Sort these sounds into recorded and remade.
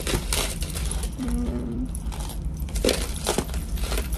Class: remade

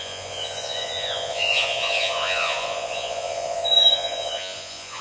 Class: remade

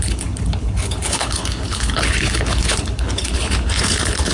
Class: remade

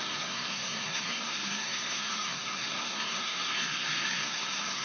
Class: remade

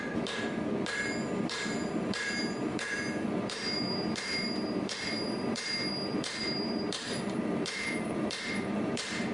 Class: remade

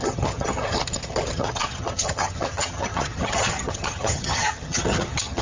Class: remade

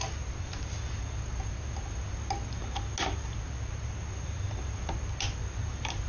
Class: recorded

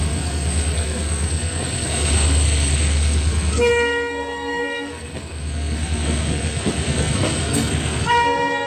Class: remade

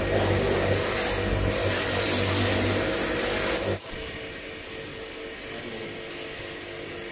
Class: recorded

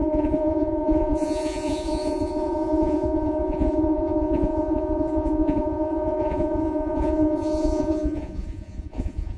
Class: remade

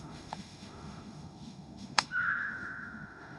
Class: remade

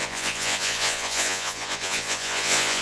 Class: remade